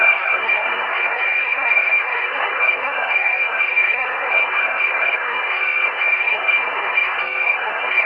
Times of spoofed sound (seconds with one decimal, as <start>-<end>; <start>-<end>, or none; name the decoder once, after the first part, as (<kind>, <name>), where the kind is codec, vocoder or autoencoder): 0.0-8.1 (codec, SNAC)